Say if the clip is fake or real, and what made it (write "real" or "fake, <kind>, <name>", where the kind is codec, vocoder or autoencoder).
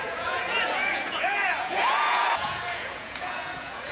fake, vocoder, Vocos